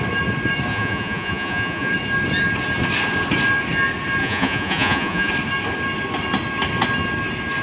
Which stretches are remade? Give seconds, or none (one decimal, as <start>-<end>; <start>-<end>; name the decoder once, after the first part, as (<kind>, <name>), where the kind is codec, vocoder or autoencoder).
0.7-1.9 (vocoder, Vocos); 4.2-5.3